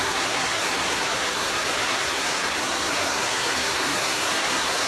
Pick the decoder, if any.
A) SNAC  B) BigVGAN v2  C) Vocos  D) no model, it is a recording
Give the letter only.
A